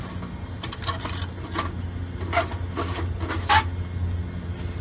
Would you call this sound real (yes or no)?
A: yes